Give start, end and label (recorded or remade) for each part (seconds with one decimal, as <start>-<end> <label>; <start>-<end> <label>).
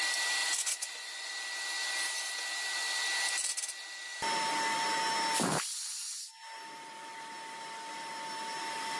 0.0-0.4 recorded; 0.4-1.3 remade; 1.3-9.0 recorded